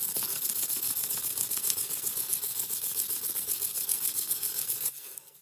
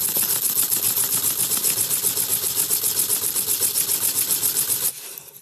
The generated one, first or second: first